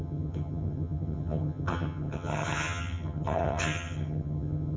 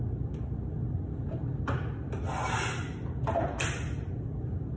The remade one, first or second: first